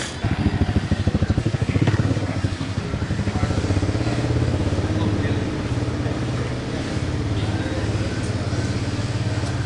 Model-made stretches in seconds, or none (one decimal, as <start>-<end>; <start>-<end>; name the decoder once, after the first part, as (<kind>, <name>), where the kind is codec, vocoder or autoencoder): 1.4-2.8 (codec, SNAC)